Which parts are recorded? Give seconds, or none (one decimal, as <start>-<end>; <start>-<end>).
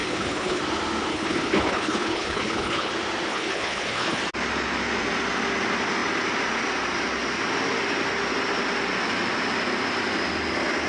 0.6-1.1; 2.9-3.3; 4.2-10.9